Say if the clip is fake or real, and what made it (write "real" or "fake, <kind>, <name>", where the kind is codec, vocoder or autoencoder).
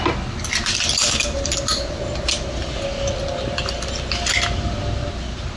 real